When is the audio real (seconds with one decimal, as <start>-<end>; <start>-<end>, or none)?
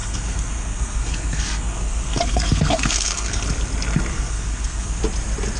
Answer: 3.4-4.1; 5.0-5.6